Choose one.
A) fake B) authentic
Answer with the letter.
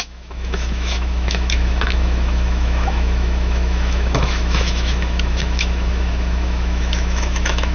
A